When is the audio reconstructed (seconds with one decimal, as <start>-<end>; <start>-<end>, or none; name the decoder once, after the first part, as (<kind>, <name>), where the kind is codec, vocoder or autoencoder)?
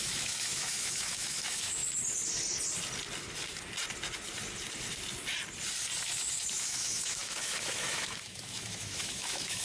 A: 0.0-1.8 (autoencoder, DAC-VAE); 6.0-9.6